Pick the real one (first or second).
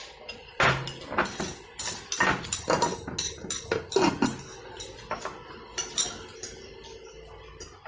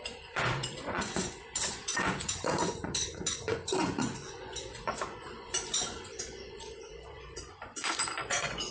first